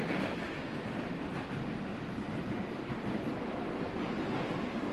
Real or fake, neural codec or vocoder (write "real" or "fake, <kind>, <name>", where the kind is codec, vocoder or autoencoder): real